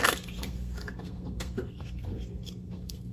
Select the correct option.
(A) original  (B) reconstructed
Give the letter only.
B